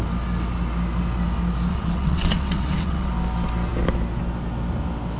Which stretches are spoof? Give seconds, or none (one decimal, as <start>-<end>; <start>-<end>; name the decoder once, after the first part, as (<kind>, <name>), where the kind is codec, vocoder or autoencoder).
1.7-3.1 (vocoder, WaveNeXt)